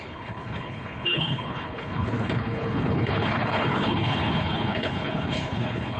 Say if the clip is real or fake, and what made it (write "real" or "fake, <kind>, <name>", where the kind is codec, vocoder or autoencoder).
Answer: fake, codec, HILCodec